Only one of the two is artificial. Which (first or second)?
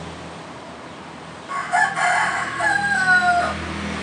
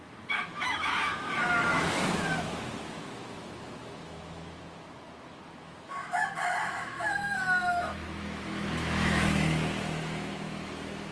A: second